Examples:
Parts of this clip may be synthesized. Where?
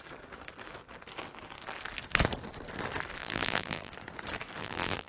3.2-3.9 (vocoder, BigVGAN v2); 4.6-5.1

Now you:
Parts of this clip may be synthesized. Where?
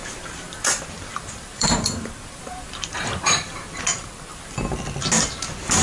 0.0-0.7 (vocoder, BigVGAN v2); 1.1-3.5; 4.3-4.8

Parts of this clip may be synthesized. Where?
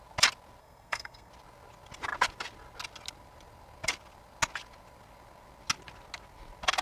0.6-1.3 (codec, SNAC)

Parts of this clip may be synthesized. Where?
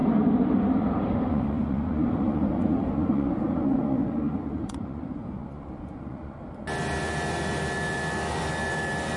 1.3-6.4 (vocoder, Vocos)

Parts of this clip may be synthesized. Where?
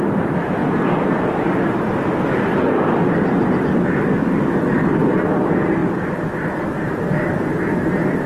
0.0-0.6 (vocoder, BigVGAN v2); 3.1-8.3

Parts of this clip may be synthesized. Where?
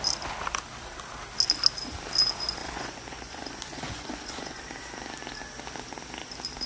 2.6-4.6 (vocoder, Vocos)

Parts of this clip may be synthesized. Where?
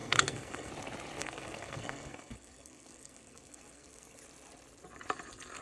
0.0-0.7 (codec, SNAC); 1.2-4.2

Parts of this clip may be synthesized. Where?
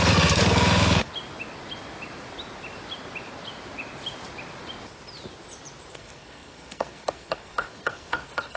0.0-1.1 (codec, SNAC); 5.9-8.6